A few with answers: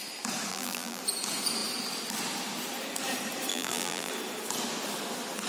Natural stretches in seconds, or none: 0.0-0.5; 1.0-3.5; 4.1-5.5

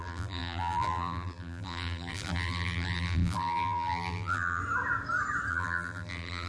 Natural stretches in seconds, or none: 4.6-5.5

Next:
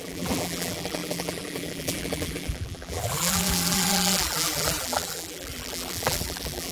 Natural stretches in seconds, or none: none

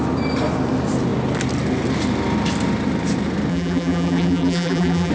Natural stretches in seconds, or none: 0.0-3.5

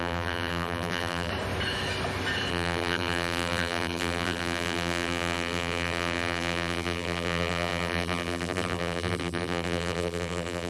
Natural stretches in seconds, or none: 1.3-2.5